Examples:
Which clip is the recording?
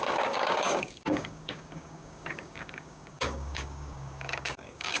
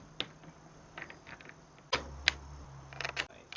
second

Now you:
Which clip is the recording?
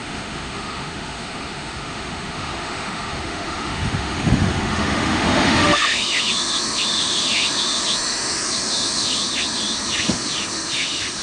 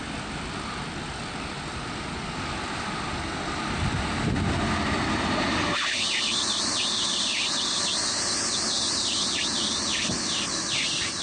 second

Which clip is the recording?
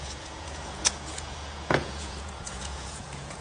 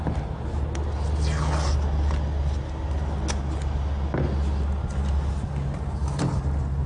second